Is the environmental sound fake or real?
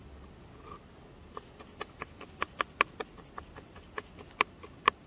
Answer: real